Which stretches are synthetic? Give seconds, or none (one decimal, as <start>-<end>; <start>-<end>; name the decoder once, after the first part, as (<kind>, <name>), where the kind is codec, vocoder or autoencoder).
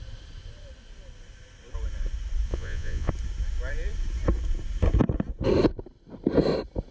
2.5-3.1 (vocoder, Vocos)